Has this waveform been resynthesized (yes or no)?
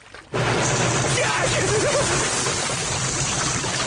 no